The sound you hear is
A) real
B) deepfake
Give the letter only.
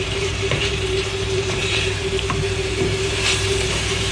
B